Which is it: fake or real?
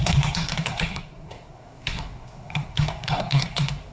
fake